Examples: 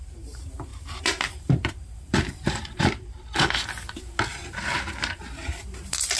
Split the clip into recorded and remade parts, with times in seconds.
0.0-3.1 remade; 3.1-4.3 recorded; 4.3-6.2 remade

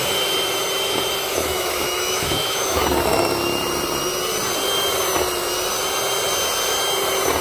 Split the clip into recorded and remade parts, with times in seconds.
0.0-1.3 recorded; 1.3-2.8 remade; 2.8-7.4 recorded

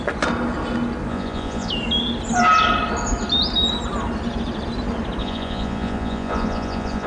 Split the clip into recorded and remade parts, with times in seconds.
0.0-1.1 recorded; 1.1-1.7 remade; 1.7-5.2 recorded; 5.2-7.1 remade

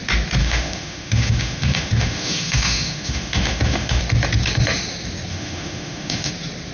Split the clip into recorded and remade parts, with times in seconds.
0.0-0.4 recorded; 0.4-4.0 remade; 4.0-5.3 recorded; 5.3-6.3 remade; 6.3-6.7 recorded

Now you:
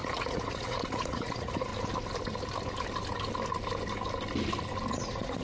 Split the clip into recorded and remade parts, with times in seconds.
0.0-1.7 remade; 1.7-4.9 recorded; 4.9-5.4 remade

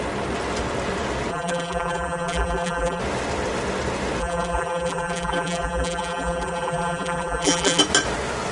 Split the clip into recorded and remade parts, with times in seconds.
0.0-1.3 recorded; 1.3-3.0 remade; 3.0-4.2 recorded; 4.2-7.8 remade; 7.8-8.5 recorded

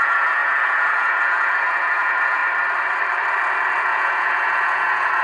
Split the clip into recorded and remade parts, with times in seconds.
0.0-2.4 remade; 2.4-3.8 recorded; 3.8-5.2 remade

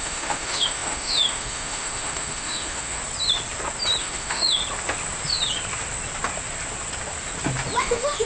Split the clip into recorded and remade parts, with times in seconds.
0.0-3.0 remade; 3.0-4.0 recorded; 4.0-4.6 remade; 4.6-7.8 recorded; 7.8-8.3 remade